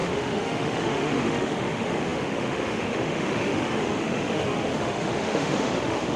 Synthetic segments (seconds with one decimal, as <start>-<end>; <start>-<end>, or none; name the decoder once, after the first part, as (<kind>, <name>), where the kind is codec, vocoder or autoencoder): 0.0-6.2 (autoencoder, DAC-VAE)